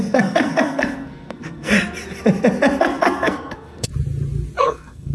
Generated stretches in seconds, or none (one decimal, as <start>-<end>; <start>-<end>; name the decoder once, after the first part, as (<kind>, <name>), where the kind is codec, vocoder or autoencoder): 0.0-1.7 (codec, SNAC); 2.8-3.9; 4.6-5.1